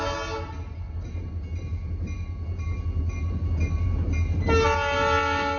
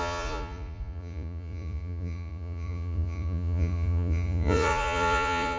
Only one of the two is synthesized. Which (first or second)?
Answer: second